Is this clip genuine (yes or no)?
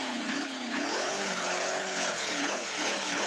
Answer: no